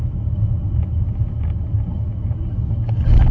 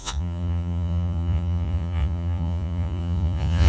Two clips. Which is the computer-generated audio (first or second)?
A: second